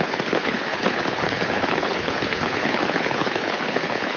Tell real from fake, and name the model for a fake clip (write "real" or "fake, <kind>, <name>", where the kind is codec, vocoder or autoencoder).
fake, codec, HILCodec